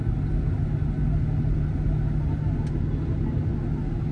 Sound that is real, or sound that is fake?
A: real